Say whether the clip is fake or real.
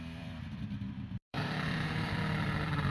fake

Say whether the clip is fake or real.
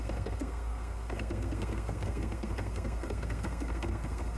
fake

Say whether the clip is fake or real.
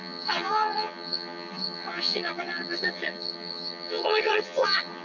fake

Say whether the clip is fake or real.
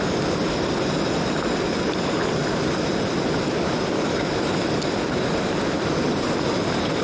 real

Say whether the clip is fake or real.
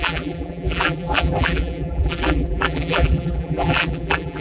fake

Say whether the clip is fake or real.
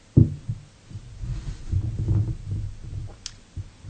real